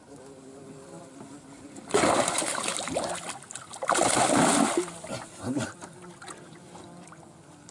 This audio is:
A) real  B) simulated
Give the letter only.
A